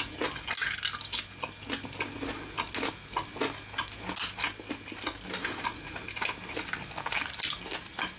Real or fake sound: real